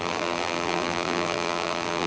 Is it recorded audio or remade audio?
remade